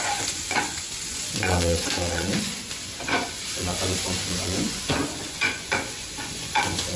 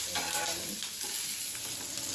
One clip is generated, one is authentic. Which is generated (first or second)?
first